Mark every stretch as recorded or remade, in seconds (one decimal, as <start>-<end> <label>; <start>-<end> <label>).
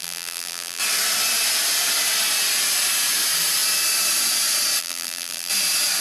0.0-0.8 remade; 0.8-4.8 recorded; 4.8-5.5 remade; 5.5-6.0 recorded